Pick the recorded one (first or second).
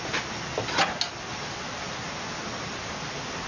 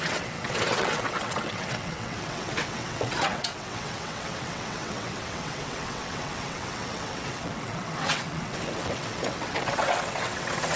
first